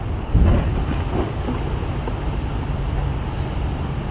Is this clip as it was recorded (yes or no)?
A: yes